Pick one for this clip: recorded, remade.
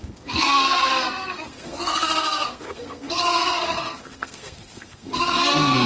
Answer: remade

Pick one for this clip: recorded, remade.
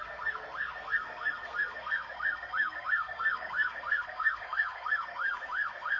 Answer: remade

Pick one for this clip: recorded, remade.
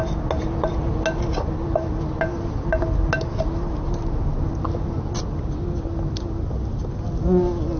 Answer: recorded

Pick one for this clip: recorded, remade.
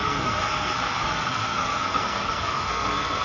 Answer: remade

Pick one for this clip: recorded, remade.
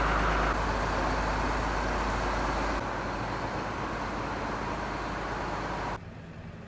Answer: recorded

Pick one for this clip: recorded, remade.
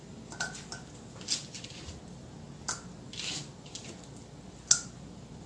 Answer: recorded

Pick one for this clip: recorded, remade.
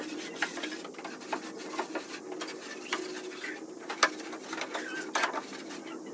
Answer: recorded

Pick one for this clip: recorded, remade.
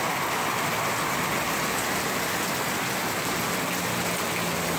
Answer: recorded